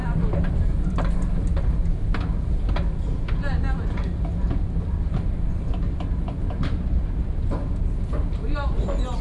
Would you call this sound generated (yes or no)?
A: no